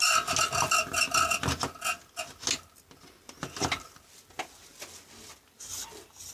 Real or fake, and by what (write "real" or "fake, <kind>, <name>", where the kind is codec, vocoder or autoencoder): real